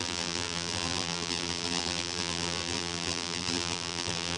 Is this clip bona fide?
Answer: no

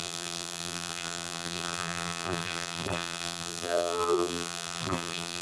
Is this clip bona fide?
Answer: no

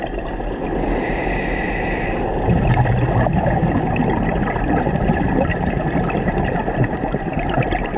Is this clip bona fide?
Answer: yes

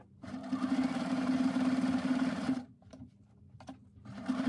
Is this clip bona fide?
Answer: no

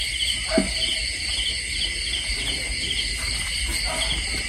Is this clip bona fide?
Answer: yes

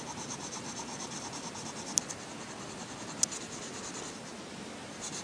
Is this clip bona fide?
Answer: yes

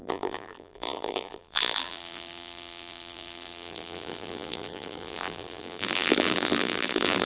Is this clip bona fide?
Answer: no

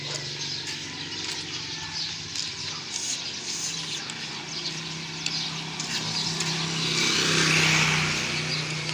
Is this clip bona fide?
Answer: yes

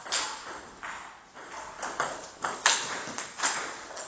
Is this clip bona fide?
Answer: yes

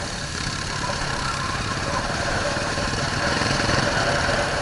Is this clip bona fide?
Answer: no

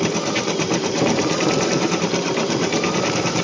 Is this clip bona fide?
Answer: no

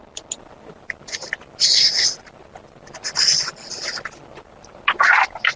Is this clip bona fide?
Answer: yes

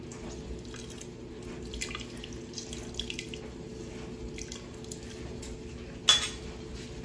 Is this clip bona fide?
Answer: yes